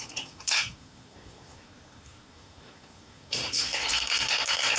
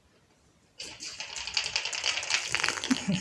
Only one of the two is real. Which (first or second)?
second